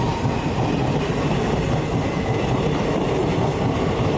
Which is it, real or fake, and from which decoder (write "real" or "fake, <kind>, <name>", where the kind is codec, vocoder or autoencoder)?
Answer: real